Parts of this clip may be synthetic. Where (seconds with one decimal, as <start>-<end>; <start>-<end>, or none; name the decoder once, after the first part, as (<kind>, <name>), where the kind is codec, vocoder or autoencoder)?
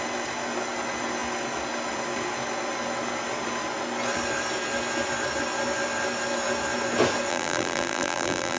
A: 7.3-8.6 (vocoder, BigVGAN v2)